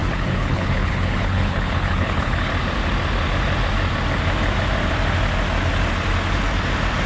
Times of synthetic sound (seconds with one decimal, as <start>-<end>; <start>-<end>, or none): 0.0-2.5